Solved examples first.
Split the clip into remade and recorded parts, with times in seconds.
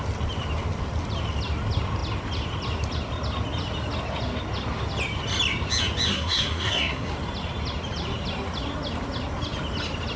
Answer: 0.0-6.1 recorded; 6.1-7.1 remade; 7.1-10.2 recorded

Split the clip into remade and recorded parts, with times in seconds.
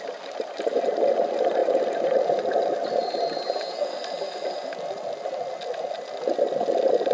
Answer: 0.0-7.1 recorded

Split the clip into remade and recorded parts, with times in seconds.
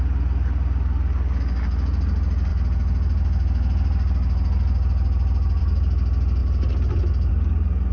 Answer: 0.0-7.9 recorded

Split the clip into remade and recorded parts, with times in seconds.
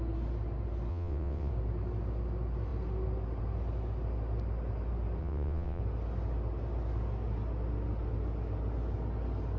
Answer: 0.0-0.9 recorded; 0.9-1.5 remade; 1.5-5.2 recorded; 5.2-5.8 remade; 5.8-9.6 recorded